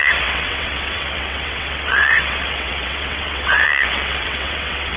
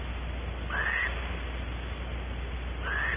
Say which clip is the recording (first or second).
second